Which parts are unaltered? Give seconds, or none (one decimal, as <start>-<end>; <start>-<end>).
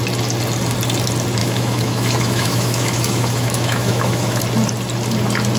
0.0-1.4; 4.4-5.6